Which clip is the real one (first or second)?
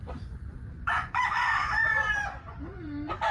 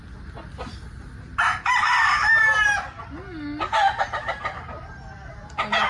second